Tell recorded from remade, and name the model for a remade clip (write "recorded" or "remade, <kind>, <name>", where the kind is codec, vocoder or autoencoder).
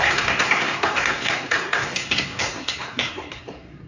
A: remade, codec, SNAC